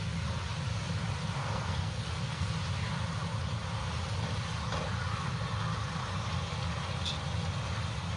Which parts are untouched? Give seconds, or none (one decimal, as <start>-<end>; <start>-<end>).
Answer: 0.0-1.4; 2.5-8.2